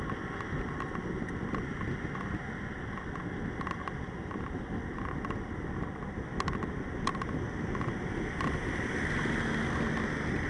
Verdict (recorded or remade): recorded